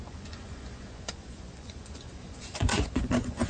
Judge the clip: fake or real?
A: fake